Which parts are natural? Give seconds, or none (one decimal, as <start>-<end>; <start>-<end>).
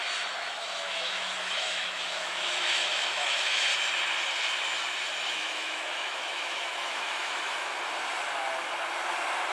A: 0.0-0.6; 3.7-5.3; 7.7-9.5